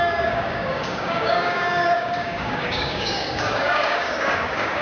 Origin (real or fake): fake